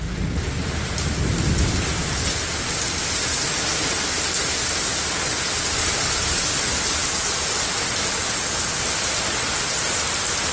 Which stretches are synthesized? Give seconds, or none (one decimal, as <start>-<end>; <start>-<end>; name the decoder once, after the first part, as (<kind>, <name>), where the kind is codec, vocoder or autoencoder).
none